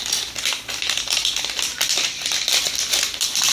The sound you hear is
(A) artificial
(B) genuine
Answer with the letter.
B